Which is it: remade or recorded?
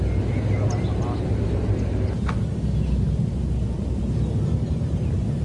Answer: recorded